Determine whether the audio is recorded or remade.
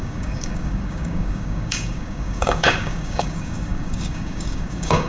remade